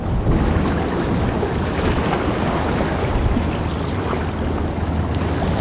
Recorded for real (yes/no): yes